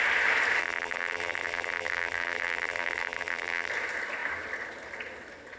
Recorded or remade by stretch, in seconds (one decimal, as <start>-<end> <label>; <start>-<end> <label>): 0.0-0.6 recorded; 0.6-3.7 remade; 3.7-5.6 recorded